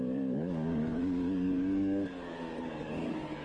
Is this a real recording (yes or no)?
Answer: no